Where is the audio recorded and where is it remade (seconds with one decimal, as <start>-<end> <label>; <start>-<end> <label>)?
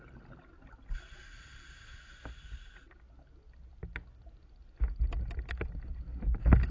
0.0-6.7 recorded